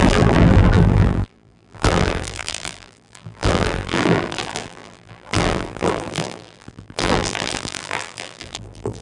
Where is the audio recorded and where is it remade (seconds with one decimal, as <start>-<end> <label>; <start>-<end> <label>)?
0.0-9.0 remade